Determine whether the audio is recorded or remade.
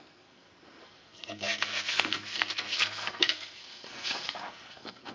remade